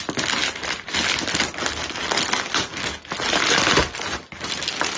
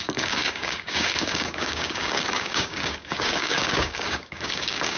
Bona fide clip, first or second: first